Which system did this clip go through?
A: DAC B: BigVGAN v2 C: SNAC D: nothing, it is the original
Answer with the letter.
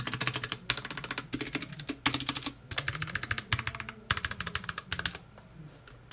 D